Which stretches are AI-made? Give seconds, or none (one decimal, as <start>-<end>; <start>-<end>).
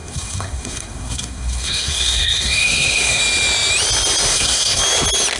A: 0.0-3.2; 4.3-4.8